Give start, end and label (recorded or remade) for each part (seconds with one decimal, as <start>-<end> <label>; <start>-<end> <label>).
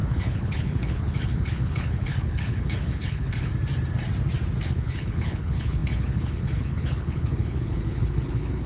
0.0-3.5 remade; 3.5-4.7 recorded; 4.7-8.7 remade